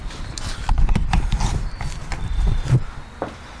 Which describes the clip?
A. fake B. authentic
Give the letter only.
B